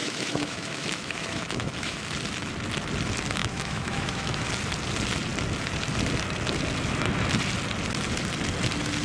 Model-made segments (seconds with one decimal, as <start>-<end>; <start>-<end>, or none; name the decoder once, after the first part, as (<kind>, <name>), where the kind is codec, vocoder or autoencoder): 0.0-2.1 (autoencoder, DAC-VAE); 3.4-4.5